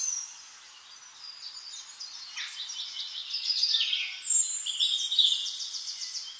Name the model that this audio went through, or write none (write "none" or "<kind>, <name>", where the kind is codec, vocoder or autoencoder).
none